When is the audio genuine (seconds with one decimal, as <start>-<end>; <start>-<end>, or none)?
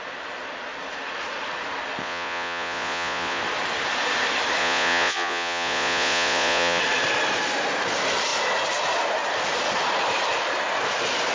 0.0-2.0; 3.4-4.6; 6.8-11.3